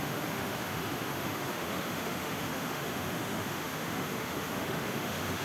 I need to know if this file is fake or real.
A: fake